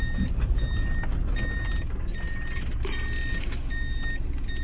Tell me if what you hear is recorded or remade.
recorded